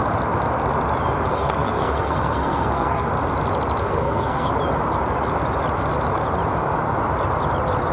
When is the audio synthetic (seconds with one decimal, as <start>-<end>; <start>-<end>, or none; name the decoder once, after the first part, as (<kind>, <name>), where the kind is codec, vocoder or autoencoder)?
1.3-3.1 (codec, SNAC); 3.8-4.5